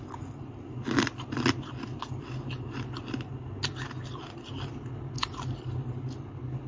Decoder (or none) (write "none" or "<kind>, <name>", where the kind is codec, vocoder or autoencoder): none